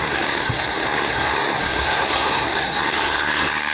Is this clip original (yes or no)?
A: no